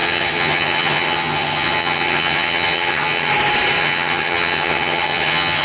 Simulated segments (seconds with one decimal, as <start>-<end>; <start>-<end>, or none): 0.0-3.3; 3.8-5.6